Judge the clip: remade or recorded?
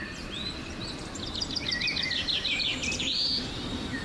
remade